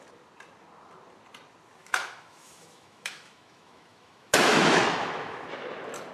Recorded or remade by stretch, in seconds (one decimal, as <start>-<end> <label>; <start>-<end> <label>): 0.0-1.8 recorded; 1.8-5.5 remade; 5.5-6.1 recorded